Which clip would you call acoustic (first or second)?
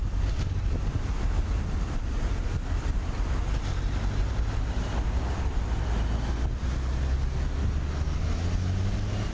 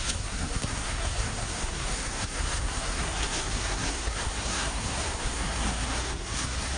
first